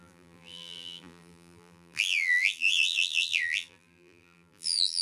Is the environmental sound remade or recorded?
remade